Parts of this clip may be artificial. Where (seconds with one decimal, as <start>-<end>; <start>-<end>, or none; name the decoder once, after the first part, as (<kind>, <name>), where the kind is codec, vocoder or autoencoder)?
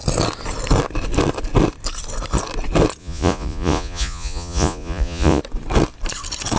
3.0-5.4 (vocoder, Vocos)